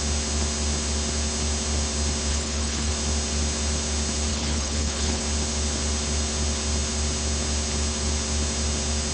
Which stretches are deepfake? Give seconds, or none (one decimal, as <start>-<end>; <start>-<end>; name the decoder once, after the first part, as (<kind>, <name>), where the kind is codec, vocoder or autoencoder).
2.3-2.9 (codec, HILCodec); 4.3-5.2